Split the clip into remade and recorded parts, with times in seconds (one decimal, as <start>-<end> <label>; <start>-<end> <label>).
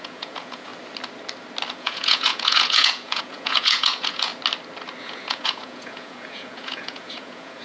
0.0-0.7 remade; 0.7-1.7 recorded; 1.7-4.3 remade; 4.3-5.0 recorded; 5.0-7.6 remade